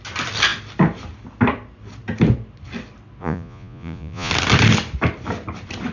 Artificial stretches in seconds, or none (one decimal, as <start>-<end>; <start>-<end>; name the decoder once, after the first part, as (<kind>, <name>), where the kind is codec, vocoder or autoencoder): 3.2-4.3 (vocoder, Vocos)